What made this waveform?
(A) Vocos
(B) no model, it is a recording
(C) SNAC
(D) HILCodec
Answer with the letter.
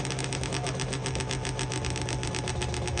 B